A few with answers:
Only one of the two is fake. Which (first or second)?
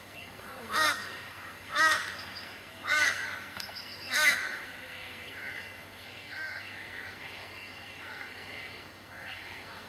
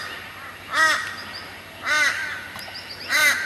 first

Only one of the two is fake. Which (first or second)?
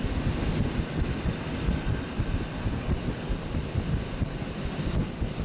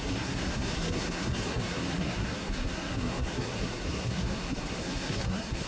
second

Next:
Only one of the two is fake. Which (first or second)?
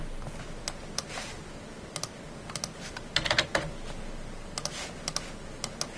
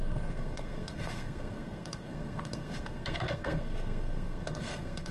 second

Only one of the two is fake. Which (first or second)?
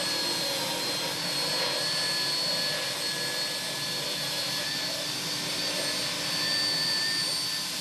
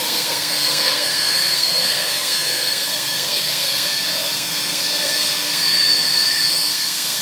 second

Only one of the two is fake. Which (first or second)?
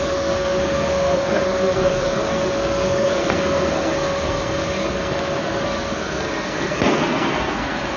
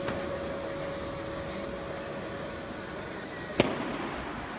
first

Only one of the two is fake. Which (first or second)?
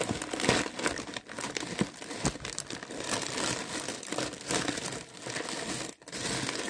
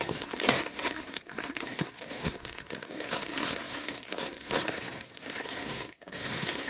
second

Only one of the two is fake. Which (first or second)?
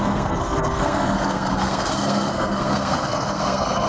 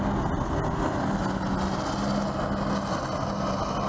first